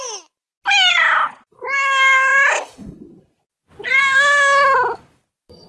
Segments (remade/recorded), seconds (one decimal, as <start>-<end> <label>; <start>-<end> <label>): 0.0-5.7 recorded